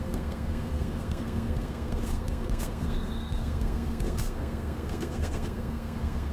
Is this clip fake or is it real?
fake